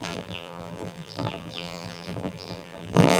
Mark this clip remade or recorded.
remade